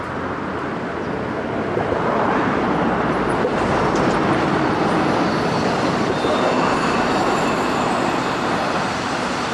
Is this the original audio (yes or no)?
yes